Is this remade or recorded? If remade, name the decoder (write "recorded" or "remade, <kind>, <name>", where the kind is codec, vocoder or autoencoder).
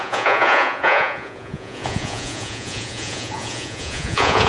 remade, vocoder, Vocos